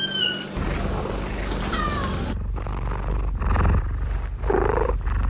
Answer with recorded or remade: recorded